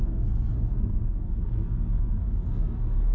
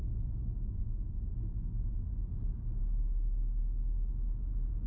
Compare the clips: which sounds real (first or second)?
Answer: second